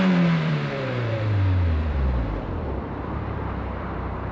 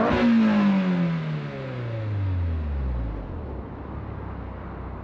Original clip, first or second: second